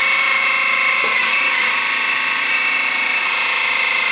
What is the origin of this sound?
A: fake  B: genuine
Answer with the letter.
A